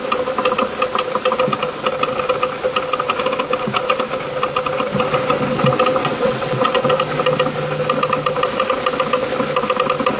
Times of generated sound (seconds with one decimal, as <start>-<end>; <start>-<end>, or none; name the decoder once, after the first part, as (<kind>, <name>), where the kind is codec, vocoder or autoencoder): 6.0-6.9 (vocoder, WaveNeXt)